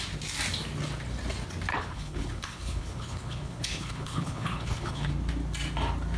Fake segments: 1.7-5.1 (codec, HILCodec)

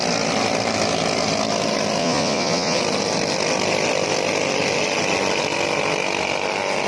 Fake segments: 2.0-2.8 (vocoder, Vocos)

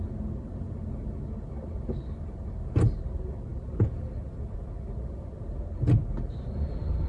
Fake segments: none